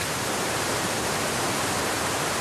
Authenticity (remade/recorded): remade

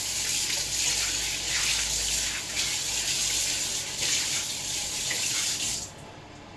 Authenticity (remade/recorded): recorded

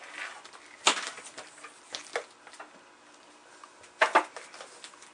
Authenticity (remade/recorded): recorded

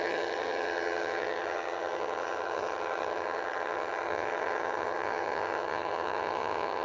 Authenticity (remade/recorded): remade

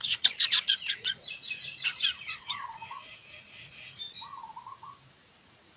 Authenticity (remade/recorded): remade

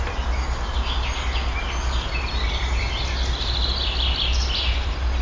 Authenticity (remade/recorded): recorded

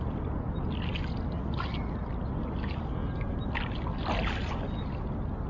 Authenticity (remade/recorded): recorded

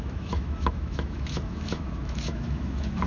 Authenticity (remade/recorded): remade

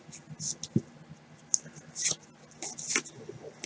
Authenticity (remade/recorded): recorded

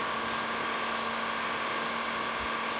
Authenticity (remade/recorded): recorded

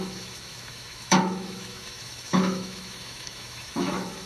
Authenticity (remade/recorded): remade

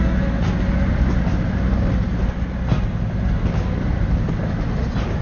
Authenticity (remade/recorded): recorded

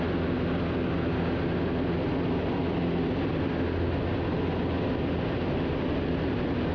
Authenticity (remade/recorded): recorded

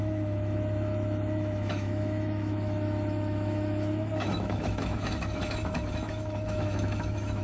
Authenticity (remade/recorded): remade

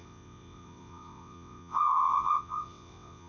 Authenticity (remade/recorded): remade